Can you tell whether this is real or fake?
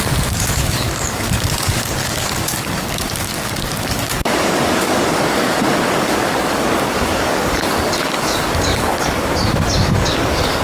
fake